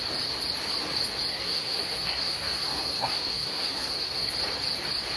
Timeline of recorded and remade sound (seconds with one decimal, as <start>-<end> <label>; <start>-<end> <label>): 0.0-1.3 recorded; 1.3-4.3 remade; 4.3-5.2 recorded